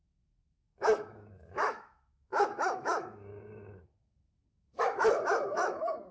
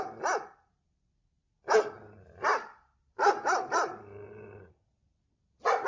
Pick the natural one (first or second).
second